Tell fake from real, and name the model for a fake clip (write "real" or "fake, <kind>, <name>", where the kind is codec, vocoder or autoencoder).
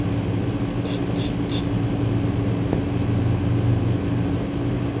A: real